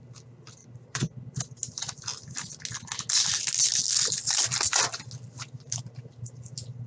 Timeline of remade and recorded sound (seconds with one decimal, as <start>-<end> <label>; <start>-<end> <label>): 0.0-0.6 recorded; 0.6-1.2 remade; 1.2-6.9 recorded